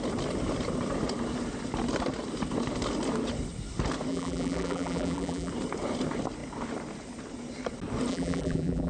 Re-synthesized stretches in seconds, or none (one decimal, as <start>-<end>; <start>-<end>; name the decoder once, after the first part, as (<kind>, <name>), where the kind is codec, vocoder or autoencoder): 4.1-5.5 (vocoder, BigVGAN v2); 8.1-8.9